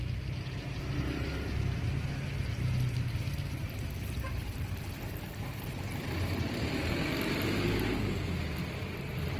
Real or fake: real